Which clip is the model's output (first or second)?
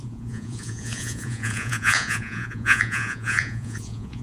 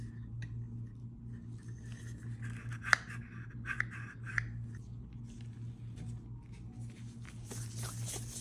first